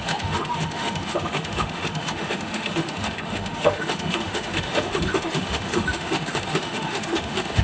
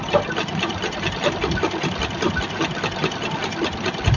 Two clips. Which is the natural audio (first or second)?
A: second